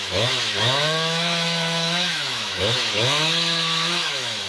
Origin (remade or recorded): remade